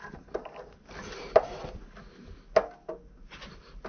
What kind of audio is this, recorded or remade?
recorded